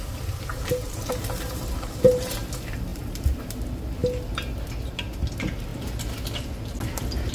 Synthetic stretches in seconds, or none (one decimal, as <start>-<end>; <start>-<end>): 0.5-2.3; 2.9-3.4

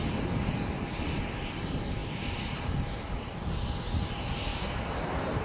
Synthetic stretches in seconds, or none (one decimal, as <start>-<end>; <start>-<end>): none

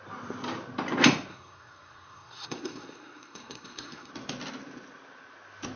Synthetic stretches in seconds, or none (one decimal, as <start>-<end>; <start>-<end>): 1.3-4.1

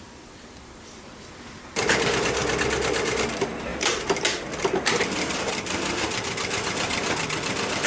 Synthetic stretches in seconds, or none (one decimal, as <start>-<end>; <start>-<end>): 0.0-2.4; 3.3-7.9

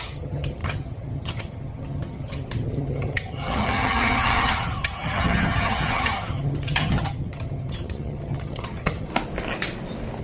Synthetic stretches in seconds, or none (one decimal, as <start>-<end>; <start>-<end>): 0.0-9.1

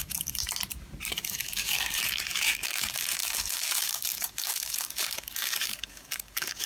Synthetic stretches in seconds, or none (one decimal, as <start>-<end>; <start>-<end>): 0.0-0.4; 1.1-6.7